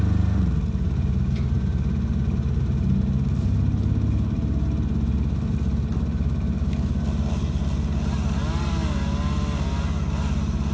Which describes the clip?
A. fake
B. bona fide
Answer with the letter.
B